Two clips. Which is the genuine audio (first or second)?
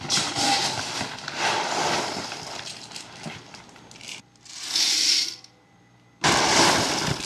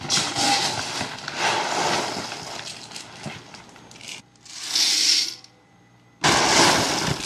second